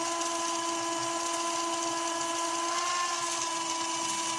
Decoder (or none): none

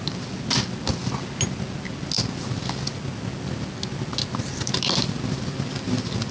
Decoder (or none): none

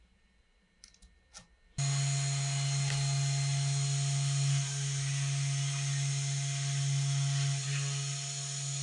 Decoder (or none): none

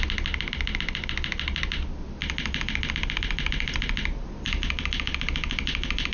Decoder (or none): none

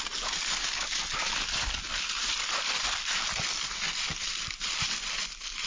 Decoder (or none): none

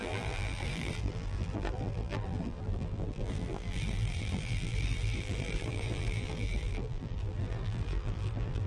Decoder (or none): vocoder, BigVGAN v2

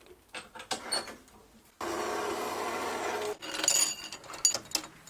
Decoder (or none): none